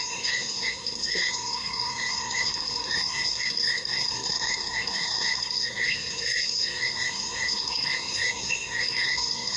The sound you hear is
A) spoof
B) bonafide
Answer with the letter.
A